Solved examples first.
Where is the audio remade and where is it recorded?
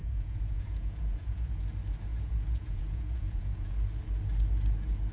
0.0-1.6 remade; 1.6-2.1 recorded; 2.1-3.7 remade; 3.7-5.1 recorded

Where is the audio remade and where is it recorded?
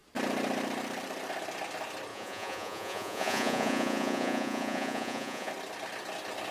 0.0-2.1 recorded; 2.1-5.5 remade; 5.5-6.5 recorded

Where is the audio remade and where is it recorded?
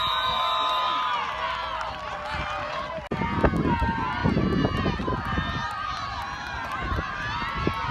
0.0-7.9 recorded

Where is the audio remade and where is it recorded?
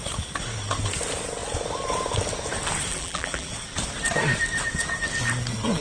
0.0-2.9 recorded; 2.9-3.5 remade; 3.5-5.8 recorded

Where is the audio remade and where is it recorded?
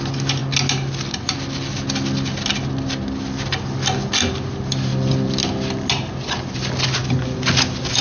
0.0-8.0 recorded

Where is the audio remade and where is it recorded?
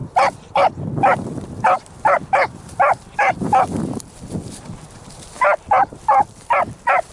0.0-4.3 remade; 4.3-7.1 recorded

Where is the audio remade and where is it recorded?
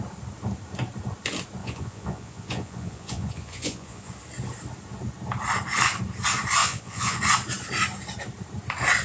0.0-1.6 recorded; 1.6-4.1 remade; 4.1-6.6 recorded; 6.6-7.2 remade; 7.2-9.0 recorded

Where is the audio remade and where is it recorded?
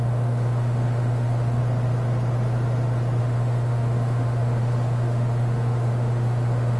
0.0-1.6 remade; 1.6-3.2 recorded; 3.2-6.8 remade